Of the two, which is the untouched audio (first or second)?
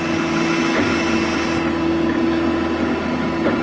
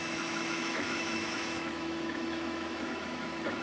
first